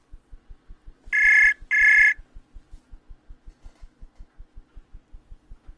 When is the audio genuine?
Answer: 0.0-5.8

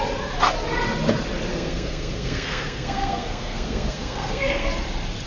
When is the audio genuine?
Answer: 0.0-1.5; 4.7-5.3

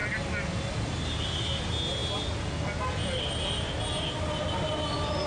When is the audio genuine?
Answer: 0.0-5.3

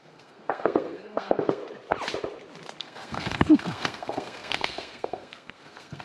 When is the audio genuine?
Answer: 1.6-2.8

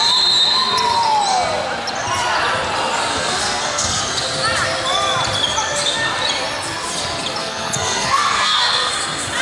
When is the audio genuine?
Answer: 0.0-3.1; 4.0-7.4; 8.9-9.4

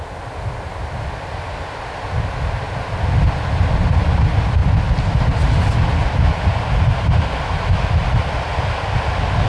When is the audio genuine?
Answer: 0.0-9.5